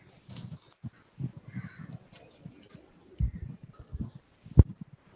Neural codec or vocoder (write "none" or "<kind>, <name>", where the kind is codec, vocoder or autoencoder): none